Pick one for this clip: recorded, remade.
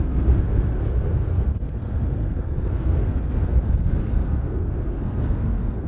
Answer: remade